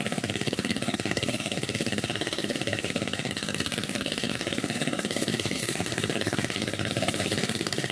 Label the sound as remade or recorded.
remade